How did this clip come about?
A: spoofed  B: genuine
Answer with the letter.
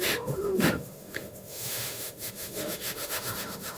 A